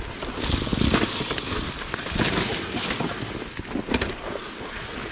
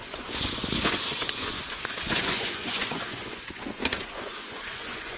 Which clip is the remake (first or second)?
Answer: second